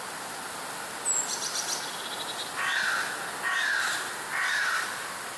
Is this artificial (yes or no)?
no